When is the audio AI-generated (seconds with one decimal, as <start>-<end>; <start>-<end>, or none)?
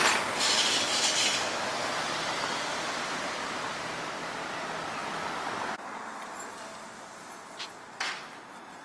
0.0-0.7; 2.7-4.1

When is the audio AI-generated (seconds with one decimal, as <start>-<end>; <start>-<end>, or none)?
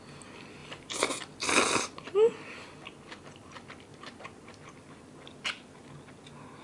0.6-1.6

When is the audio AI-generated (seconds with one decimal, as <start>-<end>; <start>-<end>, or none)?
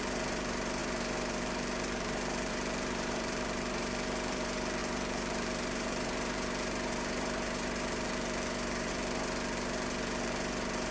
0.0-10.9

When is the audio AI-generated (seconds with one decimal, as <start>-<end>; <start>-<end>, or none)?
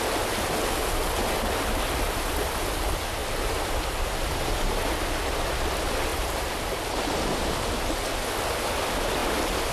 none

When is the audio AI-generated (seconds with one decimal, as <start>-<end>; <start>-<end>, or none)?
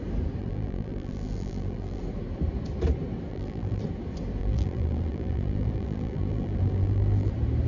0.4-2.0; 3.3-3.8; 4.4-7.3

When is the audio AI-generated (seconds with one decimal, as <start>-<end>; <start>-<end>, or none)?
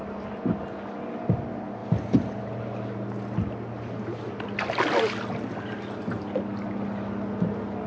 none